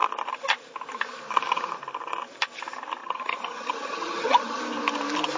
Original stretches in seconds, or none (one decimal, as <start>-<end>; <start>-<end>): 0.0-3.0; 4.6-5.4